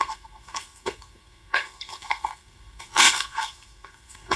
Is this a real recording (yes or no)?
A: no